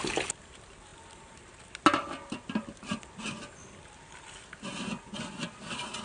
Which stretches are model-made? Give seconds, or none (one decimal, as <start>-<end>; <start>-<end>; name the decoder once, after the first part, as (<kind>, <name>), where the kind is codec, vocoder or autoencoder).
none